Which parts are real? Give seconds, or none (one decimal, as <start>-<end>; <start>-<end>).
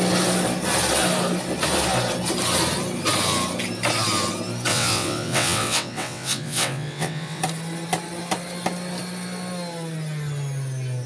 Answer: 0.0-4.7; 7.4-11.1